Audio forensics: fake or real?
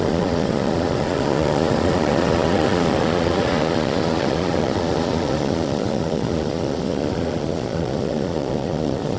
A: fake